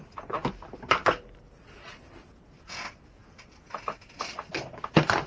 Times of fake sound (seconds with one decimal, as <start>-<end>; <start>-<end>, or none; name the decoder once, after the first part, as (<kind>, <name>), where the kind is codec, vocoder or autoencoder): none

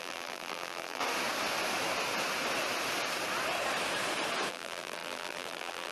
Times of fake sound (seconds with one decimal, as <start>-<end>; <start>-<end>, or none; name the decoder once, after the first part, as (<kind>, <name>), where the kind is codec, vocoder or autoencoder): 0.0-1.0 (vocoder, BigVGAN v2); 4.5-5.9

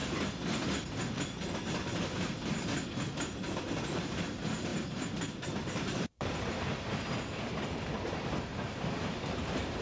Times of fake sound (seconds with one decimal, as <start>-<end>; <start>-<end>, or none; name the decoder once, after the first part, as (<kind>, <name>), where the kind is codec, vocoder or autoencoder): 3.8-8.5 (vocoder, BigVGAN v2); 9.0-9.8

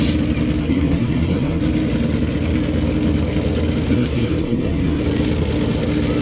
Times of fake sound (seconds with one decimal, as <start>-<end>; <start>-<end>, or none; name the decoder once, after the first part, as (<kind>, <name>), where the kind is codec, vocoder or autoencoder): 0.6-1.6 (codec, SNAC); 3.9-5.0